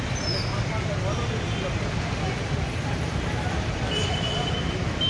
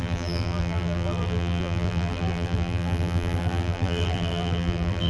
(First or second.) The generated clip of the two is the second